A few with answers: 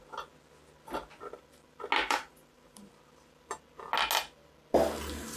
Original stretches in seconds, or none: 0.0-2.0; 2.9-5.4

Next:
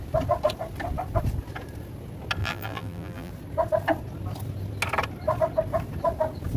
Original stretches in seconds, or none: 0.0-2.4; 3.3-6.6

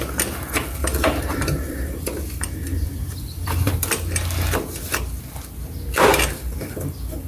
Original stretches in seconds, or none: 0.0-0.8; 3.7-6.1